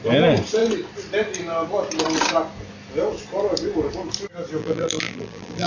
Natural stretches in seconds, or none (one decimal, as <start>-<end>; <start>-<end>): 0.0-4.6